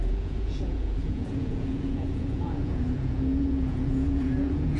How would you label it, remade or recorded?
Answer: remade